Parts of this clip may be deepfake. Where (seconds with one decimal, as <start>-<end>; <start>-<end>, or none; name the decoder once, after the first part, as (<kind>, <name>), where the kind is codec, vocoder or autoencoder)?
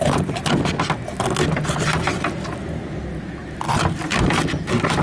none